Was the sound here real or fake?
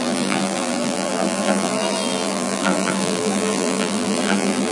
fake